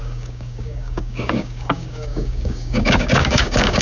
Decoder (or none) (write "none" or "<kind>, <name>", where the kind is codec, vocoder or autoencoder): codec, DAC